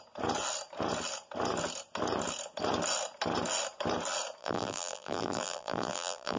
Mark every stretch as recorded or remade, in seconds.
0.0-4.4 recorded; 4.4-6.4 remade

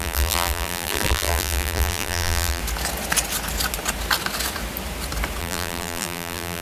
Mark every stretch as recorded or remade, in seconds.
0.0-2.6 remade; 2.6-5.4 recorded; 5.4-6.6 remade

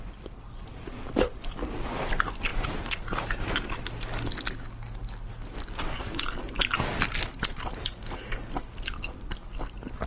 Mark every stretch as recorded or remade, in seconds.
0.0-10.1 recorded

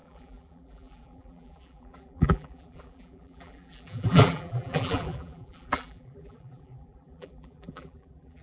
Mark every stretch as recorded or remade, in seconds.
0.0-8.4 remade

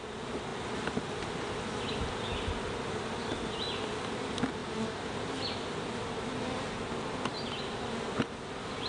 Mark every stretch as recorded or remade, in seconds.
0.0-8.9 recorded

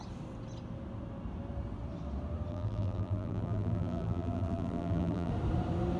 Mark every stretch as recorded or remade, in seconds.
0.0-2.5 recorded; 2.5-5.3 remade; 5.3-6.0 recorded

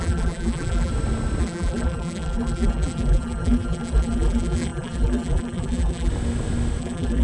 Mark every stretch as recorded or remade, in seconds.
0.0-0.9 remade; 0.9-1.4 recorded; 1.4-6.1 remade; 6.1-6.8 recorded; 6.8-7.2 remade